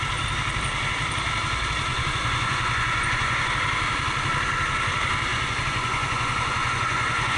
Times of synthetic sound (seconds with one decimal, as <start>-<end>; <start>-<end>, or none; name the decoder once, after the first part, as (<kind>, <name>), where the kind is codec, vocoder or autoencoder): 1.9-3.5 (vocoder, Vocos); 5.3-7.4